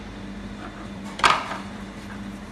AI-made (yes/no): yes